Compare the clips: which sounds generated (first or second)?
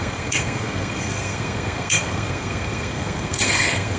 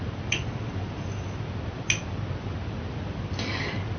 first